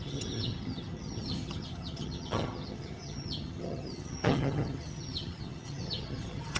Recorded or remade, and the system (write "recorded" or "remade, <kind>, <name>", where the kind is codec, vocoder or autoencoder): remade, vocoder, HiFi-GAN